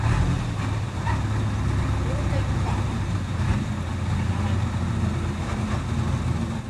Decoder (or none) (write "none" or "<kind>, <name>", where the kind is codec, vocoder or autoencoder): none